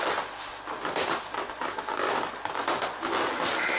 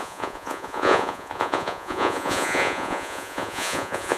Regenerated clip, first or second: second